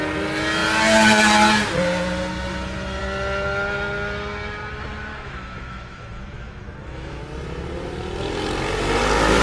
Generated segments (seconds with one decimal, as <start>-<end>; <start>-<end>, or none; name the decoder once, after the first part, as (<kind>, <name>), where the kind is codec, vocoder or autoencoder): 5.1-7.2 (autoencoder, DAC-VAE)